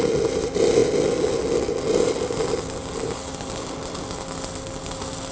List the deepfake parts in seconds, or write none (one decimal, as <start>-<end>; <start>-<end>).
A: none